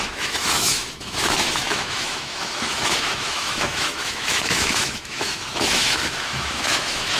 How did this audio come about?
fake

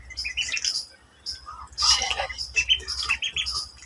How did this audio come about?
real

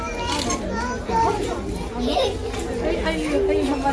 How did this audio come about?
real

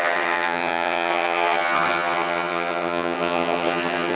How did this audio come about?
fake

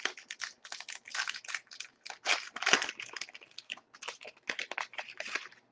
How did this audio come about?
real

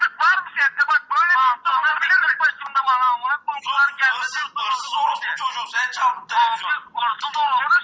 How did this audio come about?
real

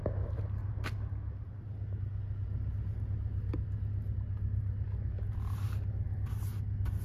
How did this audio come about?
real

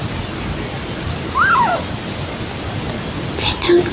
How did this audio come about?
real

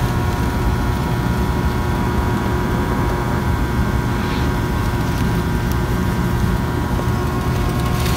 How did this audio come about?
fake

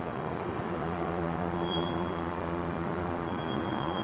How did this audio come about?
fake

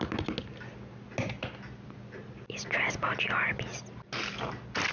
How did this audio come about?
real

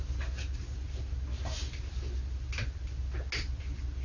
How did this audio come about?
real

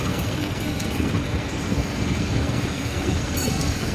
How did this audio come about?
fake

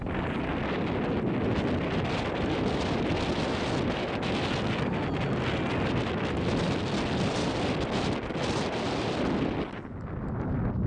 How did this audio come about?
real